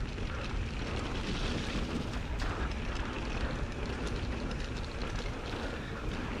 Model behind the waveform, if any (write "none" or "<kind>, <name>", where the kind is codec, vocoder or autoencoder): none